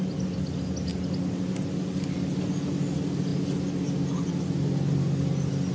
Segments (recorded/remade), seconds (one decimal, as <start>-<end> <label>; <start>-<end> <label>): 0.0-5.7 recorded